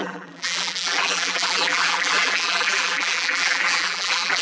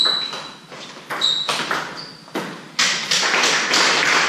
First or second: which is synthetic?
first